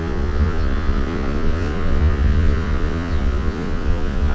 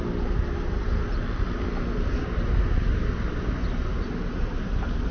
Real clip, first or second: second